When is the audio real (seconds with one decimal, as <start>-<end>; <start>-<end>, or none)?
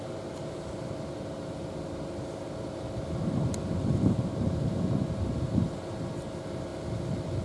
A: 0.0-7.4